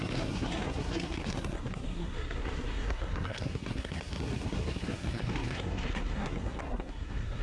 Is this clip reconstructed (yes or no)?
yes